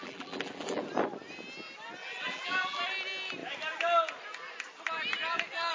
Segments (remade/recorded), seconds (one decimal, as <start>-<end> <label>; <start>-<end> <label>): 0.0-0.8 remade; 0.8-2.0 recorded; 2.0-2.8 remade; 2.8-5.7 recorded